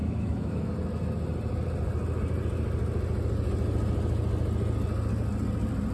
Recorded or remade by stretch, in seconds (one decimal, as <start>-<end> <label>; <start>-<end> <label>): 0.0-0.7 remade; 0.7-5.9 recorded